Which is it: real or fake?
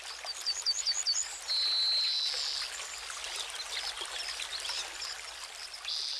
real